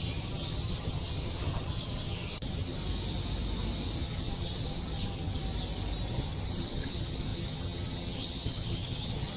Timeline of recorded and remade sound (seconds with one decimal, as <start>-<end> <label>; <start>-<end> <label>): 0.0-2.8 remade; 2.8-4.0 recorded; 4.0-5.4 remade; 5.4-6.1 recorded; 6.1-9.4 remade